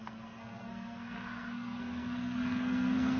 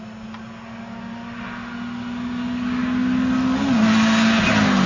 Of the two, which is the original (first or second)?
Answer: second